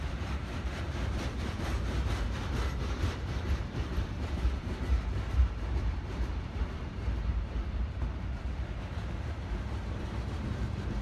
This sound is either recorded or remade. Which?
remade